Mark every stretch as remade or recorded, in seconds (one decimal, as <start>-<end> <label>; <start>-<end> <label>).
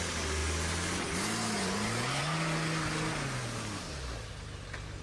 0.0-5.0 recorded